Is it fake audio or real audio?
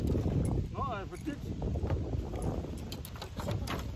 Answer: real